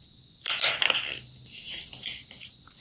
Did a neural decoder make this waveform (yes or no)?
no